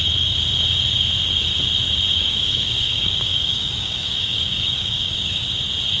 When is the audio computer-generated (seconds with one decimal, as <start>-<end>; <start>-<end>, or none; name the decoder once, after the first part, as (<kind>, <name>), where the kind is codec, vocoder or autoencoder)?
2.1-5.4 (codec, DAC)